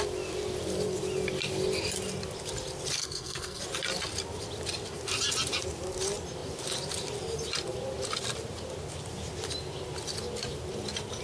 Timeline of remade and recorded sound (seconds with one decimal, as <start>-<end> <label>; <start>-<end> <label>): 0.0-3.0 recorded; 3.0-3.6 remade; 3.6-11.2 recorded